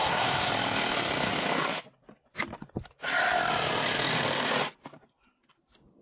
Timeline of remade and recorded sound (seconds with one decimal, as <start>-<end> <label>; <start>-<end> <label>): 0.0-0.5 remade; 0.5-6.0 recorded